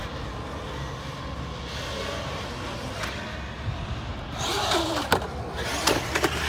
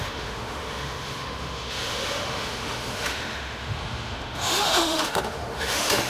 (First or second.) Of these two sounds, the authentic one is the first